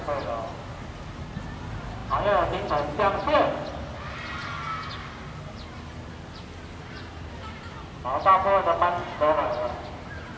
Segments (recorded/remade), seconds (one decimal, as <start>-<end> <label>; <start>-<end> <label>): 0.0-10.4 recorded